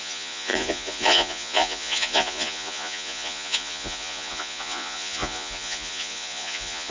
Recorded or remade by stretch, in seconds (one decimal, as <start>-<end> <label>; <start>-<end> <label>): 0.0-6.9 remade